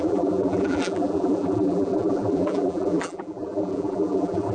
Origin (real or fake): fake